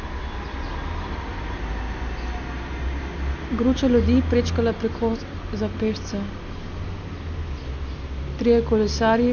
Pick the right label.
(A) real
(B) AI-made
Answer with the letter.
A